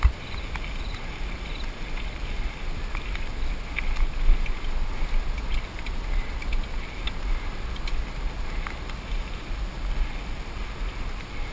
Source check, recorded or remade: recorded